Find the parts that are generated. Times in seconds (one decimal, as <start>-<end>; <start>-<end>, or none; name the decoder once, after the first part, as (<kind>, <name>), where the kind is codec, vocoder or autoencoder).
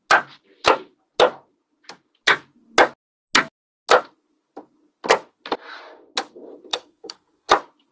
6.7-7.5 (codec, SNAC)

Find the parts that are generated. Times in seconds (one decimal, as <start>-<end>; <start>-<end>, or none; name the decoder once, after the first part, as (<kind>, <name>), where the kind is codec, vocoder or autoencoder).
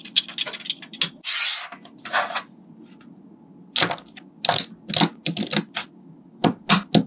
none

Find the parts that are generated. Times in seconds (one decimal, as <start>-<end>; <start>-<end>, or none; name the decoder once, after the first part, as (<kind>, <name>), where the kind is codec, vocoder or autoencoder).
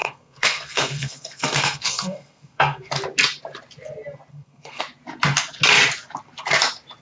0.0-2.9 (codec, SNAC); 4.3-4.8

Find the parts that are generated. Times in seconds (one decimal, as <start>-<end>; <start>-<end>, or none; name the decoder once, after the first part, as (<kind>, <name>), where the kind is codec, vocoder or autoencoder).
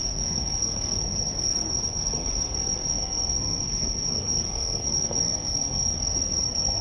0.0-6.8 (codec, SNAC)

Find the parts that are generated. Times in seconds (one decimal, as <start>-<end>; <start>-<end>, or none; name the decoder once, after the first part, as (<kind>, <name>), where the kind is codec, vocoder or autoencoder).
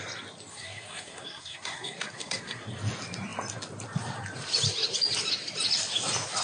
0.5-2.7 (codec, SNAC)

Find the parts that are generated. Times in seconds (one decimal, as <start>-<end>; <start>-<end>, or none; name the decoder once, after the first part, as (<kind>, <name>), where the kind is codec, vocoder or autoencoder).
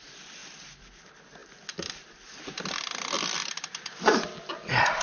none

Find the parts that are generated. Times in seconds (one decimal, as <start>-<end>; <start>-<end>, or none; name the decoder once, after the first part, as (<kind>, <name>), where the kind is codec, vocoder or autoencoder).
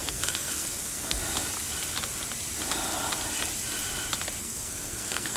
0.0-1.2 (codec, SNAC); 4.4-5.4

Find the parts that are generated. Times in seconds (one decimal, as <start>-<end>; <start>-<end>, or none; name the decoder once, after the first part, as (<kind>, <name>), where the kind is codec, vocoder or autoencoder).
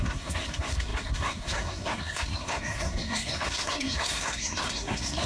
0.0-5.3 (codec, SNAC)